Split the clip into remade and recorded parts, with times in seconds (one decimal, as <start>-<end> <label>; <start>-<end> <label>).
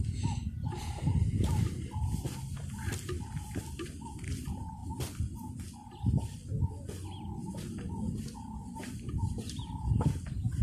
0.0-6.4 remade; 6.4-9.1 recorded; 9.1-10.6 remade